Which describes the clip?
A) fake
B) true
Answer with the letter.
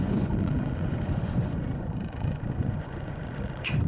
A